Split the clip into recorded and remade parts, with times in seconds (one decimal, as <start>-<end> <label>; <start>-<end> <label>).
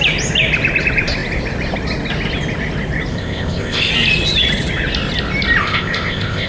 0.0-3.1 recorded; 3.1-3.9 remade; 3.9-5.6 recorded; 5.6-6.5 remade